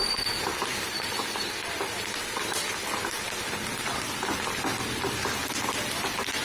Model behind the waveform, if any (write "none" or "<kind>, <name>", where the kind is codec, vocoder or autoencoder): vocoder, BigVGAN v2